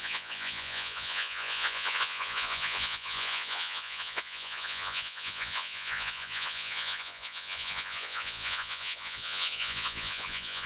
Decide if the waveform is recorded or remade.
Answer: remade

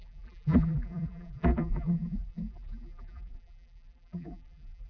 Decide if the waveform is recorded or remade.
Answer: remade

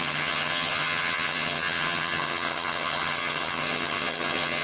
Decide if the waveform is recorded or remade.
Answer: remade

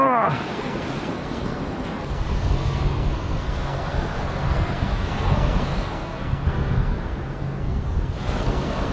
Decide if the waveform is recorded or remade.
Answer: remade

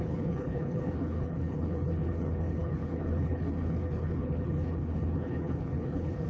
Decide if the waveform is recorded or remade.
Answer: remade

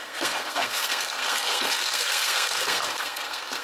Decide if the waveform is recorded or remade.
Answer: remade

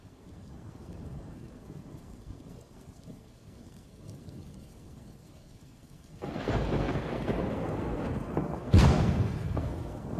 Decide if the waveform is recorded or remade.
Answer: remade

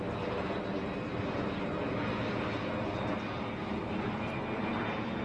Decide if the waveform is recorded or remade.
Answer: recorded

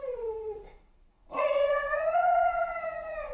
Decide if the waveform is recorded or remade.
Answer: remade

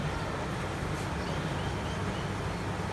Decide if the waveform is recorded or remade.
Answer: recorded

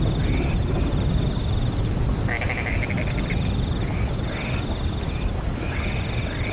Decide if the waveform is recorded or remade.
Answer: recorded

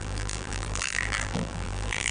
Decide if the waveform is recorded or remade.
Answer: remade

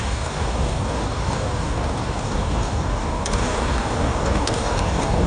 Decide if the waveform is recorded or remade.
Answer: remade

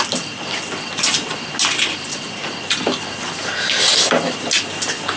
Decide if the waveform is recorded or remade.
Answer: recorded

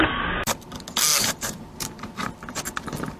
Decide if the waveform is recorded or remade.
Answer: recorded